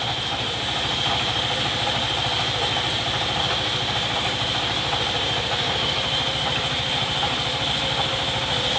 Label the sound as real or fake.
real